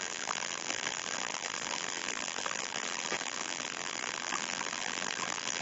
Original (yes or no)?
no